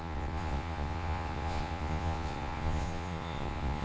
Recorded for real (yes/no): no